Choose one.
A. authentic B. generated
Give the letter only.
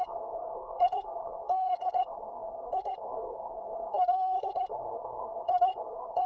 B